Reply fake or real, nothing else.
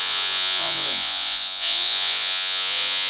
fake